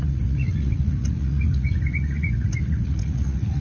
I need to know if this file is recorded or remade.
remade